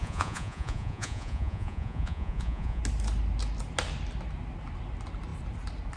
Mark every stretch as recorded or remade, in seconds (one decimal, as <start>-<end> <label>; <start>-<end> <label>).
0.0-2.8 remade; 2.8-6.0 recorded